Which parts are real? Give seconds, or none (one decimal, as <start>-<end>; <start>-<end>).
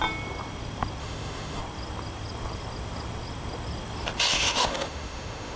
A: 0.0-1.0; 1.6-4.3